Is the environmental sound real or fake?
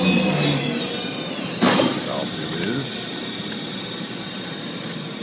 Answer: fake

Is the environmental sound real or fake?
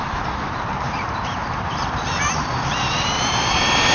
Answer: fake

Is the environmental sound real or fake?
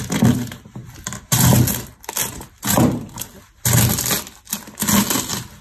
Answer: real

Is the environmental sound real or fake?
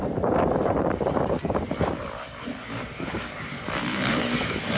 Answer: fake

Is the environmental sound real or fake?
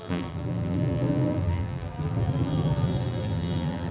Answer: fake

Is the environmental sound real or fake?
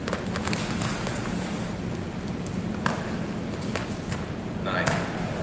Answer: real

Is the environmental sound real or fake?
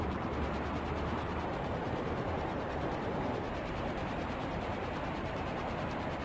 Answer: fake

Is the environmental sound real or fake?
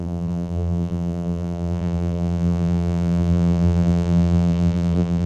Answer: fake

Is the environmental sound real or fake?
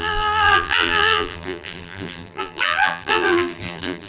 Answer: fake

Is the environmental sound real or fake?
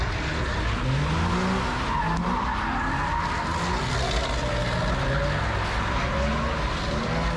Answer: real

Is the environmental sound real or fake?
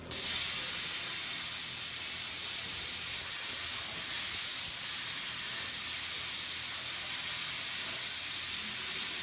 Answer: real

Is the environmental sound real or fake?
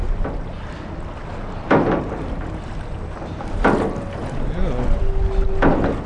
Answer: real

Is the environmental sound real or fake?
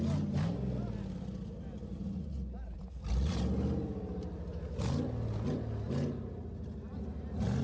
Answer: real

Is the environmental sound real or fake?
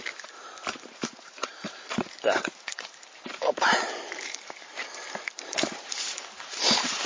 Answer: fake